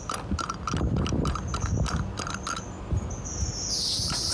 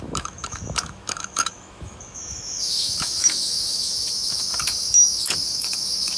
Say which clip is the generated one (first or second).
second